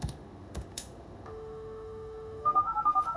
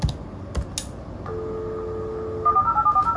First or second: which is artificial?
first